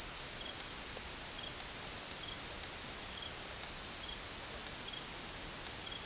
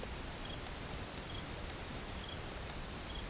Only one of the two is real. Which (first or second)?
first